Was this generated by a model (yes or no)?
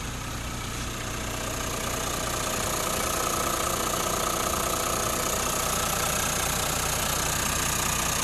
no